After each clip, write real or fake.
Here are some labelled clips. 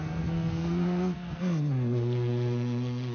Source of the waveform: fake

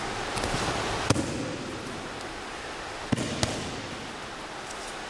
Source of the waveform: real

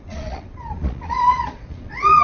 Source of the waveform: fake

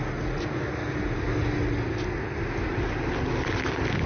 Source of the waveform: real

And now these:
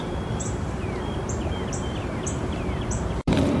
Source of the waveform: fake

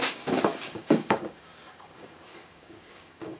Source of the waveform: fake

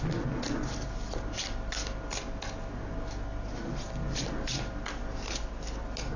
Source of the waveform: real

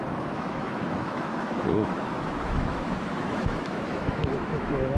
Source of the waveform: fake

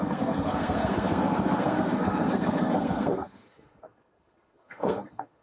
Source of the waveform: fake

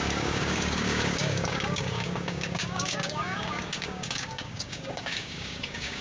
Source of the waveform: fake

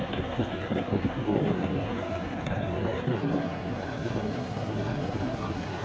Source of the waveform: fake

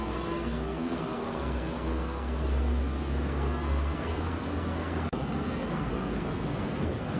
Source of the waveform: fake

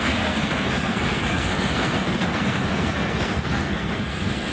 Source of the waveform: fake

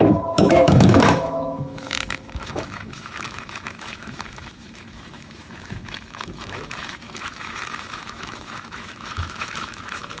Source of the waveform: fake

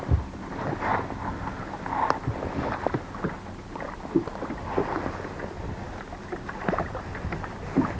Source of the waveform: real